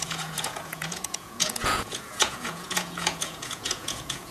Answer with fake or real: fake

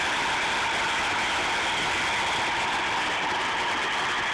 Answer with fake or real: real